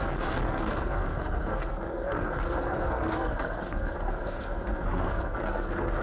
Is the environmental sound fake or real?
fake